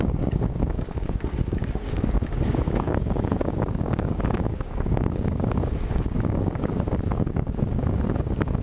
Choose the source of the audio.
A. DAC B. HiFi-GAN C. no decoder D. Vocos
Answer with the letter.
A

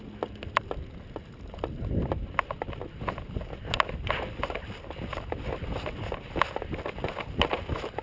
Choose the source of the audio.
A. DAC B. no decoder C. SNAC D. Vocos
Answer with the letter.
B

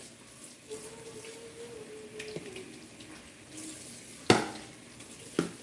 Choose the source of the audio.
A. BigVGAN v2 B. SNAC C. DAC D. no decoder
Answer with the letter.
D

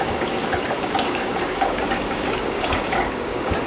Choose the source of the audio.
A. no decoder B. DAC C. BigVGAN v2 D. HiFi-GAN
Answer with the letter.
B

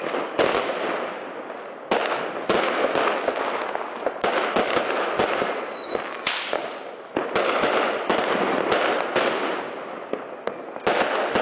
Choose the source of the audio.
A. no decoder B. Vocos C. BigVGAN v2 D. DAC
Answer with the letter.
A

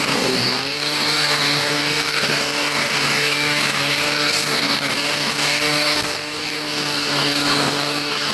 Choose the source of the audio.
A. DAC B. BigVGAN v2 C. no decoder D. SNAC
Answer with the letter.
A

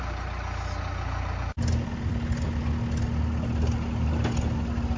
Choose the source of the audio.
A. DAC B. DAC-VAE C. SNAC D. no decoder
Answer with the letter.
D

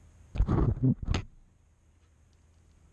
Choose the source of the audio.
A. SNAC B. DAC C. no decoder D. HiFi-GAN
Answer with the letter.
C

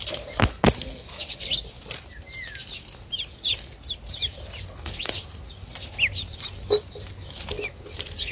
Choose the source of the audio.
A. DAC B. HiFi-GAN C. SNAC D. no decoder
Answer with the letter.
D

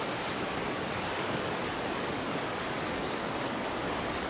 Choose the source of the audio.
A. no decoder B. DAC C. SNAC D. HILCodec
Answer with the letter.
B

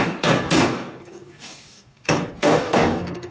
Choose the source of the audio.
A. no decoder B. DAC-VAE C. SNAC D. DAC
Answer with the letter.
D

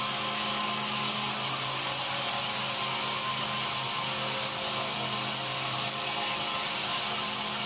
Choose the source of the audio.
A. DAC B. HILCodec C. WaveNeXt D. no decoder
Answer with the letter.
D